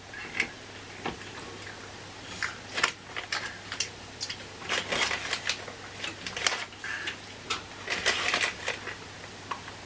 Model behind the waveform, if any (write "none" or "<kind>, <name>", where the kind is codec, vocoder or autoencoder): none